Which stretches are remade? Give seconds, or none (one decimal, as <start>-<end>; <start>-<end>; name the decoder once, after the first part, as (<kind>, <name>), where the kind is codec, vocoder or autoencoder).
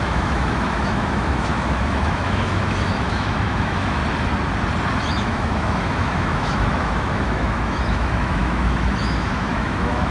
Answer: 0.0-4.0 (autoencoder, DAC-VAE); 5.0-10.1